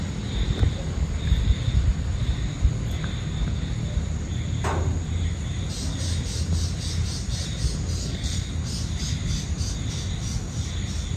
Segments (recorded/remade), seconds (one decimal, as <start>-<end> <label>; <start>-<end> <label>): 0.0-8.0 recorded; 8.0-8.5 remade; 8.5-11.2 recorded